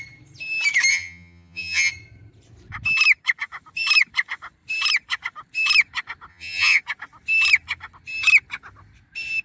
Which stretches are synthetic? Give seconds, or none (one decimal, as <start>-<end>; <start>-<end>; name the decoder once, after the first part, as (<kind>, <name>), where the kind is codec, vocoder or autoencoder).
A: 0.9-1.9 (vocoder, HiFi-GAN); 6.3-6.8